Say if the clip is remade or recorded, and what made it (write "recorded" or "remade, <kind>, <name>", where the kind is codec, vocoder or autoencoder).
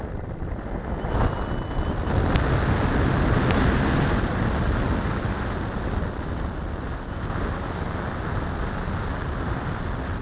recorded